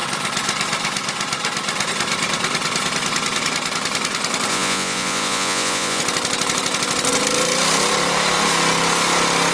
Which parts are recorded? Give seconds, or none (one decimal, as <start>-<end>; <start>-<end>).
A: 0.0-4.5; 6.0-9.5